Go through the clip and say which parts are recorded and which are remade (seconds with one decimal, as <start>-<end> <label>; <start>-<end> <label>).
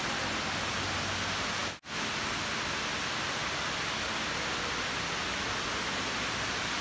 0.0-6.8 recorded